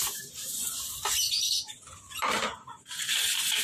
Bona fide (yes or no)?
no